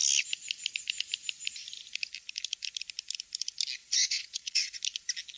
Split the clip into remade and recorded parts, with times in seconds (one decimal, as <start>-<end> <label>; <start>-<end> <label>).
0.0-3.8 recorded; 3.8-4.8 remade; 4.8-5.4 recorded